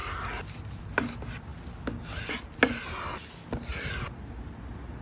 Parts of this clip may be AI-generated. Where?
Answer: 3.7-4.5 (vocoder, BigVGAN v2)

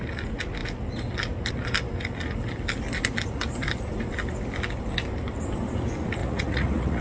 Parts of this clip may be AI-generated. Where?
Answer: 6.2-7.0 (vocoder, Vocos)

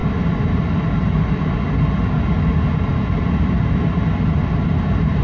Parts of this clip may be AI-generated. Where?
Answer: none

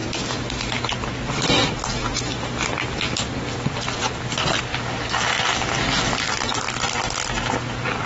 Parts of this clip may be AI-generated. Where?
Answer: none

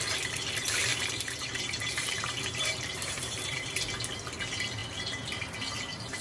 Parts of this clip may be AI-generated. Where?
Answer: 0.9-3.7 (vocoder, BigVGAN v2)

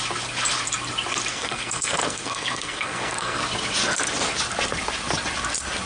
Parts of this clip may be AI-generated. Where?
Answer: 1.3-3.4 (codec, SNAC)

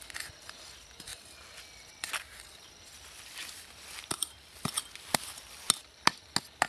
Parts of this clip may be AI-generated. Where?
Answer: none

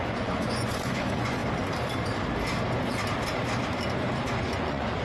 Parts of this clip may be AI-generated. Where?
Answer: 0.0-1.4 (vocoder, Vocos); 4.4-5.0